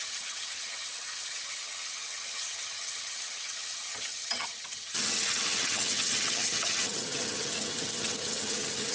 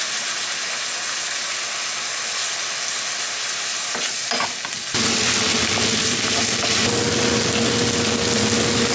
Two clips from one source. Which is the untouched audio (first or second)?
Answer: second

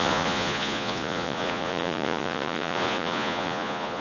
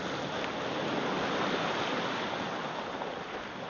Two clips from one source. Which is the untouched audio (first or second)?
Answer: second